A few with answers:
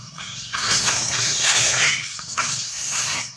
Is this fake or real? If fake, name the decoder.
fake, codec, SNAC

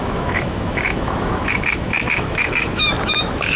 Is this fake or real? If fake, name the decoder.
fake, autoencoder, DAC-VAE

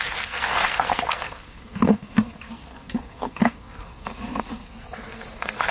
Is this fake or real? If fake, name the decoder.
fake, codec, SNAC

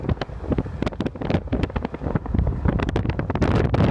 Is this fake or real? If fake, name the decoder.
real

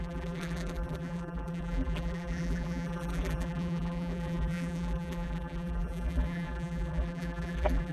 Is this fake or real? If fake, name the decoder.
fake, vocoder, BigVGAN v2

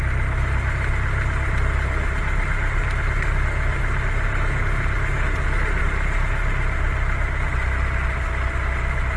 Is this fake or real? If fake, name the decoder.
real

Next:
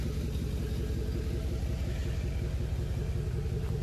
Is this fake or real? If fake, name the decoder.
real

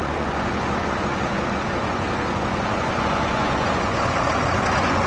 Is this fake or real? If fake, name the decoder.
fake, vocoder, Vocos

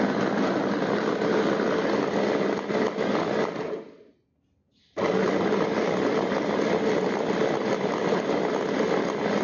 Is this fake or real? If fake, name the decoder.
real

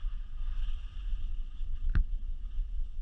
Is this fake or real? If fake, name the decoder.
fake, vocoder, WaveNeXt